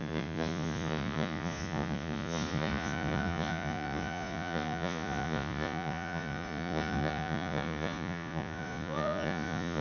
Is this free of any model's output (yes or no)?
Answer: no